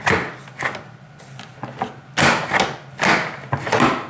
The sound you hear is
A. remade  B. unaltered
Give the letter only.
B